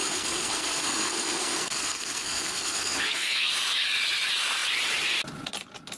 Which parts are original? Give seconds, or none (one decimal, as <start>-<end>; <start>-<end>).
3.5-6.0